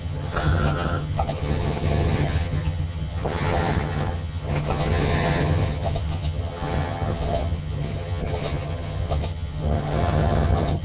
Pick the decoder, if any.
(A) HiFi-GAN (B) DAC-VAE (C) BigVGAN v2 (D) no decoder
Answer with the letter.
A